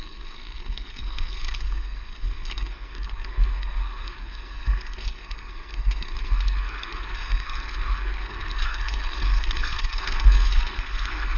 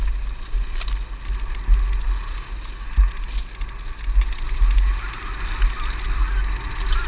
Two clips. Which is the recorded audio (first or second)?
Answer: second